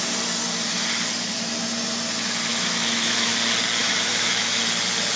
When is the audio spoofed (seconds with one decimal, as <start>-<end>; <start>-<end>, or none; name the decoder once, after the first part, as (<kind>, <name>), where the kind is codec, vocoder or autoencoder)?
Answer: 2.5-3.3 (autoencoder, DAC-VAE); 3.8-4.6